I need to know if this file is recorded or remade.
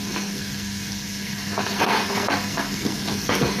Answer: remade